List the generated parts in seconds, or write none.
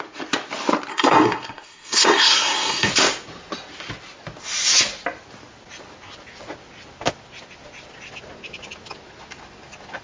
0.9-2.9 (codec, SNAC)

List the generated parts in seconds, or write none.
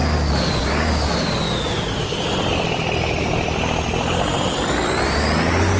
none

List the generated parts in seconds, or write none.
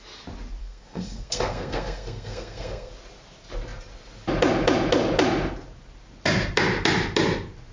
0.6-2.9 (codec, SNAC)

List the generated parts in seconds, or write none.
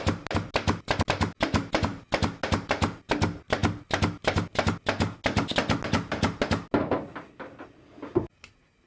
none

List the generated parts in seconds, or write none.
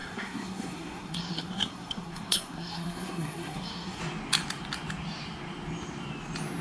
0.0-4.0 (codec, SNAC)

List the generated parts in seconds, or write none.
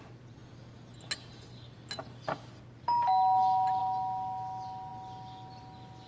none